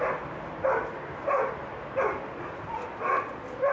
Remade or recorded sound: recorded